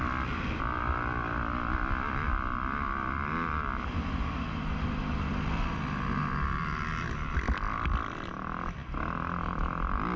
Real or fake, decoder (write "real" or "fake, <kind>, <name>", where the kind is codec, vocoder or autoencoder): real